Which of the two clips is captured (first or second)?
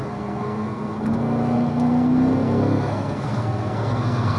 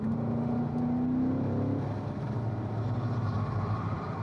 second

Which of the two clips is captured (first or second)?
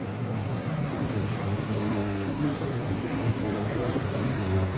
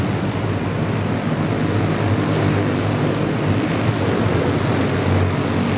second